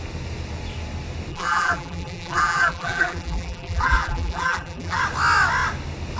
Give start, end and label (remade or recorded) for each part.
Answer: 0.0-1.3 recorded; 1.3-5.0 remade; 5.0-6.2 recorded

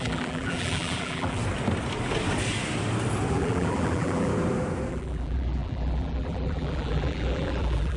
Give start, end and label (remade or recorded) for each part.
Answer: 0.0-1.4 remade; 1.4-3.3 recorded; 3.3-4.3 remade; 4.3-4.9 recorded; 4.9-8.0 remade

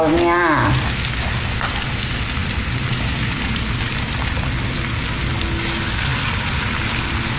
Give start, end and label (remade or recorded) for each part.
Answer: 0.0-2.4 recorded; 2.4-5.2 remade; 5.2-6.1 recorded; 6.1-6.9 remade; 6.9-7.4 recorded

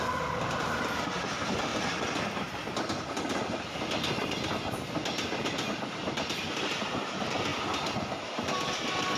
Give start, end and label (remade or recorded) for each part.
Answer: 0.0-1.7 remade; 1.7-5.9 recorded; 5.9-7.5 remade; 7.5-9.2 recorded

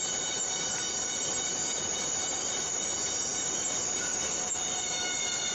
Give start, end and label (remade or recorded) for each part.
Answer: 0.0-5.5 recorded